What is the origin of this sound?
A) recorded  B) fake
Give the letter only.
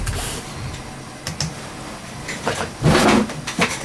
A